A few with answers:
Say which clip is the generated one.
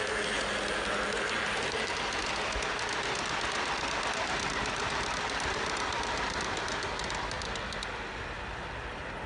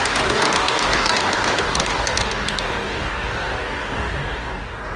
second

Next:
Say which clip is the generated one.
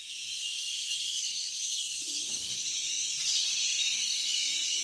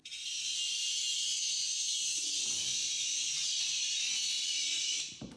first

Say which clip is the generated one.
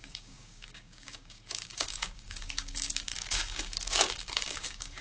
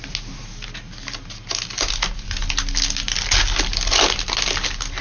first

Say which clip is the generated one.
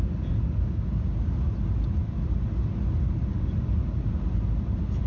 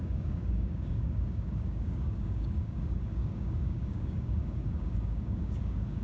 second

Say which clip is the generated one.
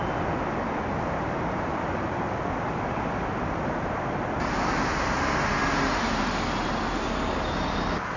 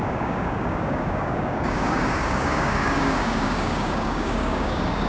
second